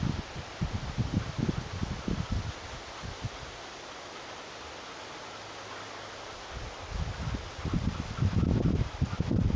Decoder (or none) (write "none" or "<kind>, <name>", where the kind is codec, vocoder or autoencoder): none